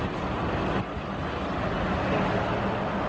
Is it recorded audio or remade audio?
recorded